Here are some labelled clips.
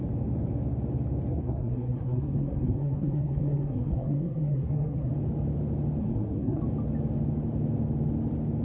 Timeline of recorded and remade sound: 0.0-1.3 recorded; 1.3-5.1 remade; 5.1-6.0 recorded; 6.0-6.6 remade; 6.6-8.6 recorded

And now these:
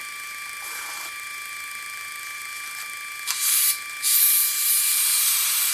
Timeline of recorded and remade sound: 0.0-5.7 remade

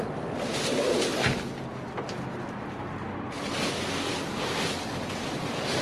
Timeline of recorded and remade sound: 0.0-5.8 recorded

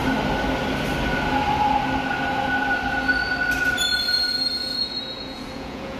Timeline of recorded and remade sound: 0.0-4.6 recorded; 4.6-6.0 remade

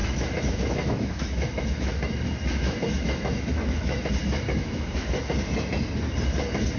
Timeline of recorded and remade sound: 0.0-4.1 remade; 4.1-4.6 recorded; 4.6-5.1 remade; 5.1-6.8 recorded

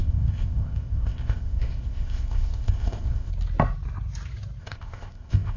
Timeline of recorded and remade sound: 0.0-3.3 remade; 3.3-4.6 recorded; 4.6-5.6 remade

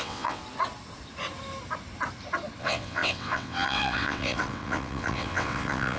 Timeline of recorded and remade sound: 0.0-0.4 remade; 0.4-2.6 recorded; 2.6-6.0 remade